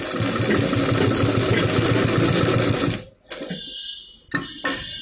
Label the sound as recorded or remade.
recorded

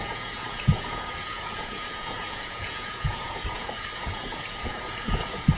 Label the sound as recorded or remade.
remade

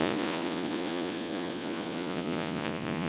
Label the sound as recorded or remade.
remade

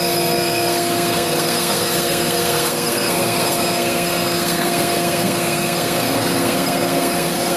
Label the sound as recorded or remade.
remade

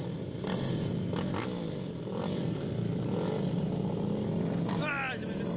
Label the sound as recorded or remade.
recorded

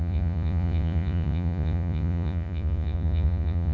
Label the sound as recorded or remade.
remade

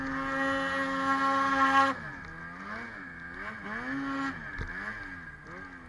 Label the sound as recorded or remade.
recorded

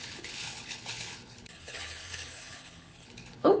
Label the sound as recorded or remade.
remade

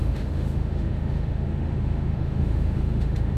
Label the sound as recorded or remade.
remade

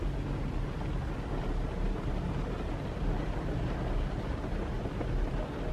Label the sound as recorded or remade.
recorded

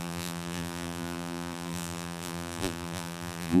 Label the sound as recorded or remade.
remade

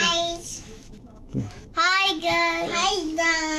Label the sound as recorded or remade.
remade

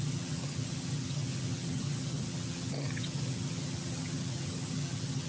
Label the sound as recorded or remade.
remade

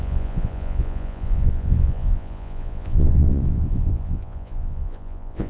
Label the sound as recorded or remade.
remade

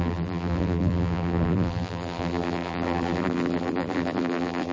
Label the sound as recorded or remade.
remade